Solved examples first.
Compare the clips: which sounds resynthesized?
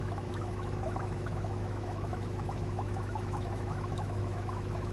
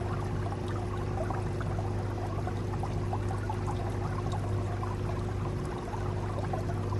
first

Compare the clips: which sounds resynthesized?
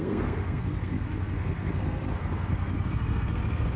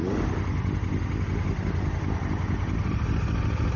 first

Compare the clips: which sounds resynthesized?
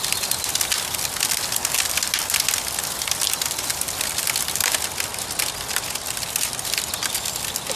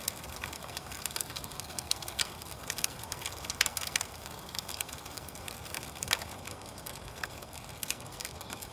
second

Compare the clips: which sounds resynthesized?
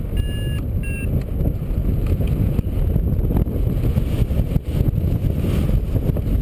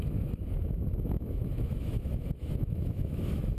second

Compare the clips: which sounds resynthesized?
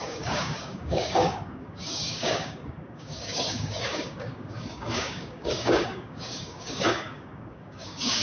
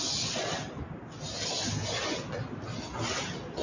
first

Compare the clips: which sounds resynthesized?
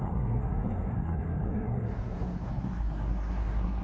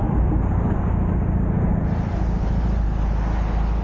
first